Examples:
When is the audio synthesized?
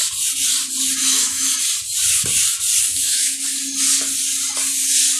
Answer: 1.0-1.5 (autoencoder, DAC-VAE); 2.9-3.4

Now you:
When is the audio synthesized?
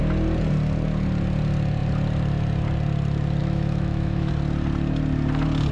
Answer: 3.4-4.3 (autoencoder, DAC-VAE)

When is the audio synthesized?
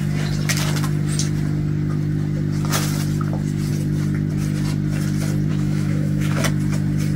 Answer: 5.5-6.4 (autoencoder, DAC-VAE)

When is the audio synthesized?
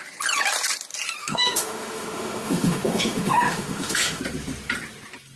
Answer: 1.2-4.2 (autoencoder, DAC-VAE)